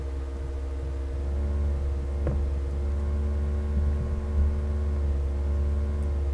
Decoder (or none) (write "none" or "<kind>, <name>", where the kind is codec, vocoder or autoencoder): none